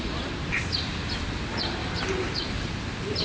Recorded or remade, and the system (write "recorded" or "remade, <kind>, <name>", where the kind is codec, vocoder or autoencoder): recorded